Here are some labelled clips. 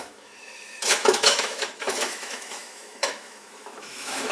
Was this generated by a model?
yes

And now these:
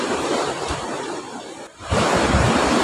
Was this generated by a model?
yes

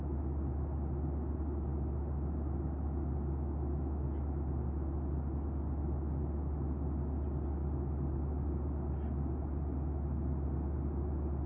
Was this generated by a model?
no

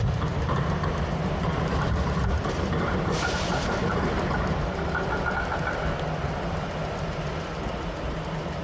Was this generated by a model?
no